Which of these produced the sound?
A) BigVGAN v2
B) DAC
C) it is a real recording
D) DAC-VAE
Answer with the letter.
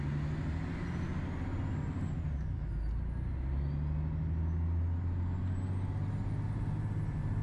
C